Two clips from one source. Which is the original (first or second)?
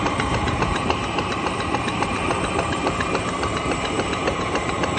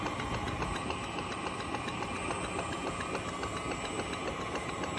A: second